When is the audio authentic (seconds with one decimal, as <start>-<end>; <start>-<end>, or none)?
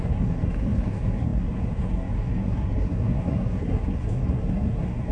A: none